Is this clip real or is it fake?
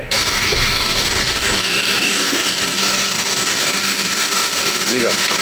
fake